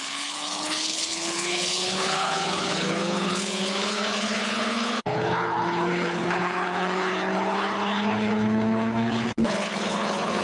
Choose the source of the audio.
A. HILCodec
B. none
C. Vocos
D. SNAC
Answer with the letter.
A